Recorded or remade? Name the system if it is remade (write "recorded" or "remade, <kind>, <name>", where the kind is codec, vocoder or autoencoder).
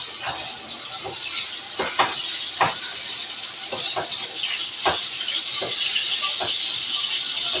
recorded